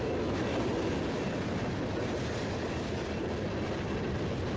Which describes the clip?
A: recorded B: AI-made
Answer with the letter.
A